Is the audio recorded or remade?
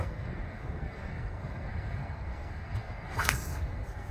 remade